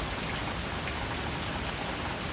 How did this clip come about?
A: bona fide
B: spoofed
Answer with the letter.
A